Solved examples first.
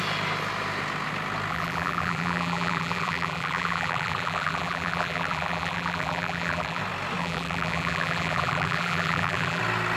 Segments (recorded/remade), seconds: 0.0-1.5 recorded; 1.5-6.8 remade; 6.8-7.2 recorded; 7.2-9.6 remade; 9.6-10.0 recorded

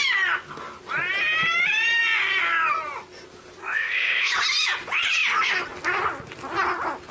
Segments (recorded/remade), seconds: 0.0-3.6 recorded; 3.6-4.3 remade; 4.3-7.1 recorded

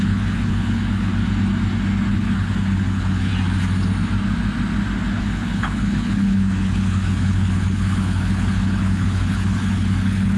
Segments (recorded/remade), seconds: 0.0-1.1 remade; 1.1-2.1 recorded; 2.1-3.3 remade; 3.3-5.2 recorded; 5.2-10.4 remade

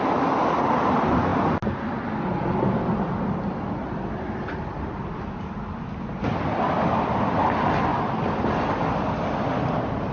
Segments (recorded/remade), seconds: 0.0-10.1 recorded